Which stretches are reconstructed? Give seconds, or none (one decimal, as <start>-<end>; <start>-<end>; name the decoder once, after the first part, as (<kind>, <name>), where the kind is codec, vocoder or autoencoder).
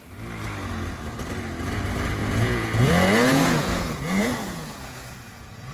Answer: 2.2-5.7 (vocoder, Vocos)